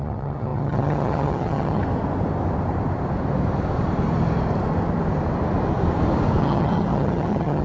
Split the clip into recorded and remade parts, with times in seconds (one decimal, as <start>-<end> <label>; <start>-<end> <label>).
0.0-1.8 remade; 1.8-6.4 recorded; 6.4-7.6 remade